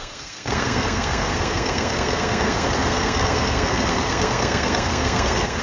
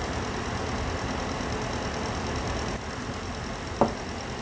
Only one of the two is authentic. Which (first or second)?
second